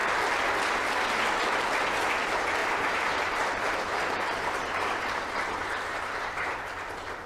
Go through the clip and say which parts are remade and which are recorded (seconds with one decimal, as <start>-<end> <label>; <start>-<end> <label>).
0.0-2.6 recorded; 2.6-6.5 remade; 6.5-7.3 recorded

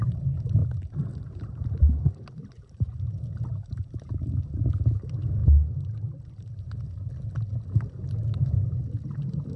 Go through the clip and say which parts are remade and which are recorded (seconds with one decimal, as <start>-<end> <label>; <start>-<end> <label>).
0.0-0.6 recorded; 0.6-4.6 remade; 4.6-9.6 recorded

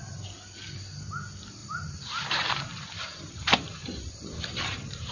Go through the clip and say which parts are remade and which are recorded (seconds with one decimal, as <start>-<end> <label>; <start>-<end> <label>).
0.0-1.6 recorded; 1.6-5.1 remade